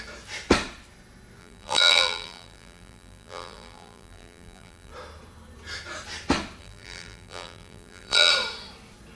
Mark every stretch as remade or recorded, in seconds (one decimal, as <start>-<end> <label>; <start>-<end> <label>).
0.0-1.4 recorded; 1.4-4.9 remade; 4.9-6.6 recorded; 6.6-8.3 remade; 8.3-9.2 recorded